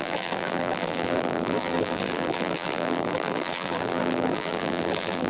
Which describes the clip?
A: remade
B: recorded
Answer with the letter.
A